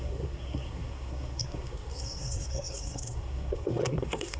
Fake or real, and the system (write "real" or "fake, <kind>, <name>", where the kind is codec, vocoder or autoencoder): fake, codec, SNAC